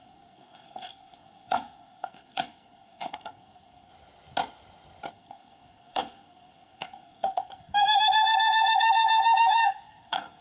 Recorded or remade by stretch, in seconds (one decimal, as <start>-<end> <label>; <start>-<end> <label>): 0.0-3.9 remade; 3.9-5.1 recorded; 5.1-10.4 remade